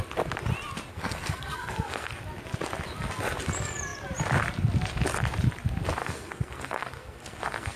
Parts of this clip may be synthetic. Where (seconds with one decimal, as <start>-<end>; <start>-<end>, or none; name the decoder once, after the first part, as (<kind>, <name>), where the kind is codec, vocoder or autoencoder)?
0.9-2.2 (codec, SNAC); 6.0-7.8